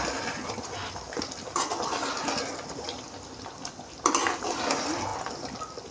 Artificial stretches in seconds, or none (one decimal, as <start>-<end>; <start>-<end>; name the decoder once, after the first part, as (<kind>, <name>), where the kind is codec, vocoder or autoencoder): none